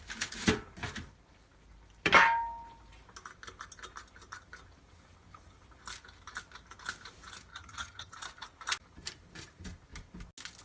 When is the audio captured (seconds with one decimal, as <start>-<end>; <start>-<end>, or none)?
0.0-7.5; 8.1-10.6